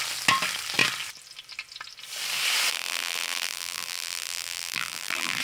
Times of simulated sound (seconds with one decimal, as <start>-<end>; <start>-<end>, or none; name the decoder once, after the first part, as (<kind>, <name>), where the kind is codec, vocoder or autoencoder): 2.7-5.4 (vocoder, BigVGAN v2)